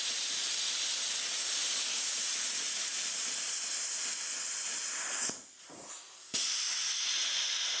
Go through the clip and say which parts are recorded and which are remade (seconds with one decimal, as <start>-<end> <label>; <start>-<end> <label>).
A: 0.0-1.9 recorded; 1.9-3.0 remade; 3.0-6.8 recorded; 6.8-7.8 remade